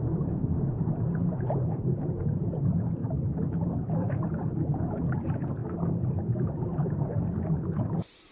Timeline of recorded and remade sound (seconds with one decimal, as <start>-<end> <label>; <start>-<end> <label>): 0.0-3.0 remade; 3.0-3.6 recorded; 3.6-5.6 remade; 5.6-8.3 recorded